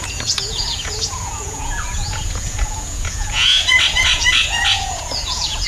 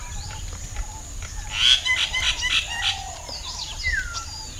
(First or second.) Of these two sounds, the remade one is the first